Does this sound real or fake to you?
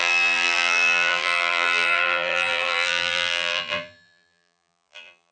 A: fake